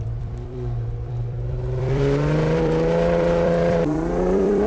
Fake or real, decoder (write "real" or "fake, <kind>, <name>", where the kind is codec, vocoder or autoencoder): fake, vocoder, BigVGAN v2